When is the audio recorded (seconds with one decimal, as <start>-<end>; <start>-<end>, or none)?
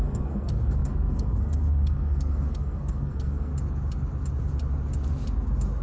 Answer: 3.5-5.8